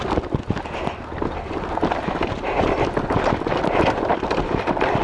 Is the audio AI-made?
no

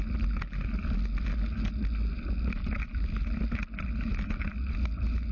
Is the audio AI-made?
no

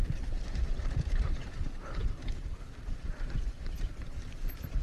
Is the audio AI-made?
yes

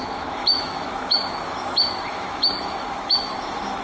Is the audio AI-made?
yes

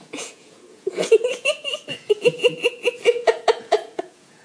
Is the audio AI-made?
yes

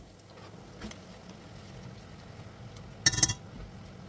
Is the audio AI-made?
no